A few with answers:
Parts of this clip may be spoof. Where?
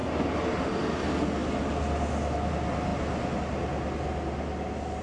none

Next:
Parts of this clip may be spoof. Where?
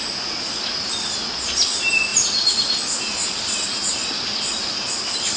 none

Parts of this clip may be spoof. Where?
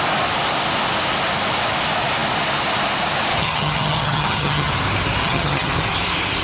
3.3-4.7 (vocoder, HiFi-GAN); 5.2-5.7